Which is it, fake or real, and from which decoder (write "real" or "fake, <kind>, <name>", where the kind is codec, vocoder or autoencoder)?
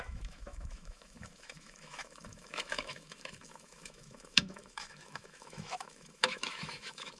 fake, autoencoder, DAC-VAE